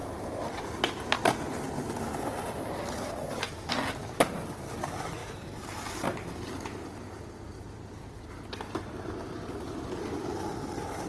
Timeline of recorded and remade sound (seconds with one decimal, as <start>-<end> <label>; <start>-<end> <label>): 0.0-11.1 recorded